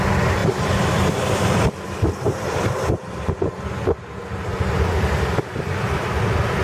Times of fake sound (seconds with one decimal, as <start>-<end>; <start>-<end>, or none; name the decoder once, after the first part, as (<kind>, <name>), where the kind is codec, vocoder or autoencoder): 0.4-2.7 (vocoder, BigVGAN v2); 4.5-5.4